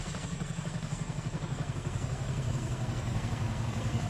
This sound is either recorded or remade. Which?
remade